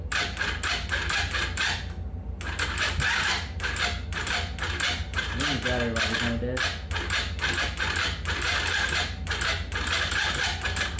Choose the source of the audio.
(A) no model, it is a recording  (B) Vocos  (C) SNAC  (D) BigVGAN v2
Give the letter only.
A